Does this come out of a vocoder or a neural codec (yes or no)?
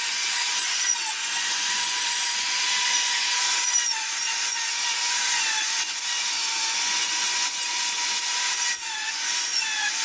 yes